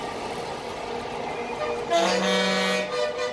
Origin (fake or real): real